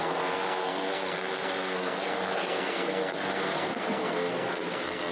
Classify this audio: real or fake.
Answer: fake